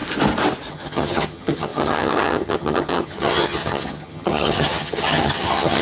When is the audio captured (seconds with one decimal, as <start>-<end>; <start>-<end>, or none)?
0.0-0.7